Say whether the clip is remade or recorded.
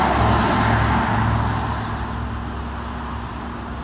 recorded